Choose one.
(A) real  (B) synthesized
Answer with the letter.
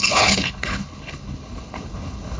B